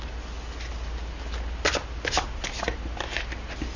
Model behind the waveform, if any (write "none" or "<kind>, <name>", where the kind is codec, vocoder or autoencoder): none